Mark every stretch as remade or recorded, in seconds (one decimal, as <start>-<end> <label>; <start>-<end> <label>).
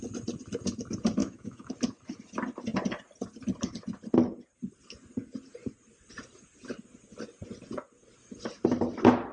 0.0-1.2 recorded; 1.2-1.7 remade; 1.7-9.3 recorded